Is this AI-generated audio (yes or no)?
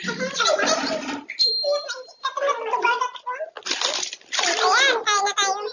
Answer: no